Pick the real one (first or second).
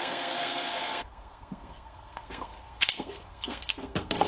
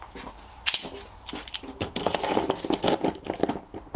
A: second